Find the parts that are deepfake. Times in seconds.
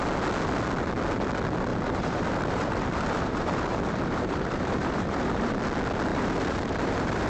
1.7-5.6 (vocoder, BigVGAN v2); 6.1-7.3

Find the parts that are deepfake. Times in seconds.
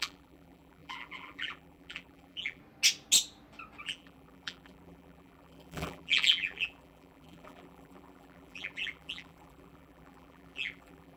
0.0-2.6 (vocoder, BigVGAN v2); 3.8-11.2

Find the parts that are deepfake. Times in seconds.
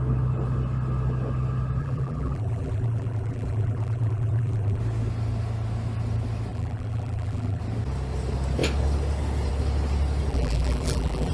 1.8-4.8 (vocoder, BigVGAN v2); 6.5-7.6; 10.3-11.3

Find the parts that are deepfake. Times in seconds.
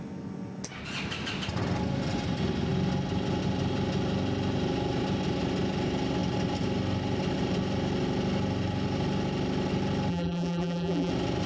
10.1-11.1 (vocoder, BigVGAN v2)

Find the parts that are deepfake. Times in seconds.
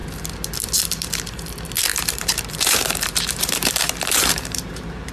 1.9-5.1 (vocoder, BigVGAN v2)